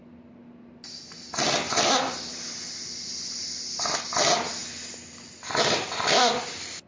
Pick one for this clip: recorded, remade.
recorded